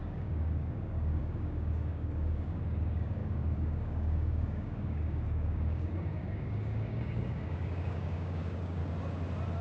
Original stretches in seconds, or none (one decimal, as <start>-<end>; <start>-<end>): 8.8-9.6